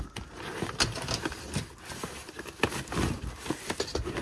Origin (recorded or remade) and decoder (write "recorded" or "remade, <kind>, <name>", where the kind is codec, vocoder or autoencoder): recorded